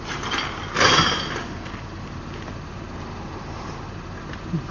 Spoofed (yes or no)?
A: no